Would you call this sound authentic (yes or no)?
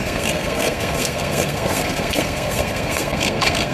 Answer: no